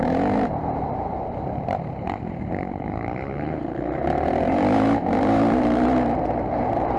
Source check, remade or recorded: remade